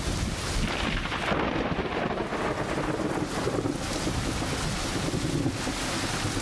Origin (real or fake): real